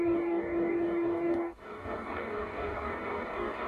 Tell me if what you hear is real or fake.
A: fake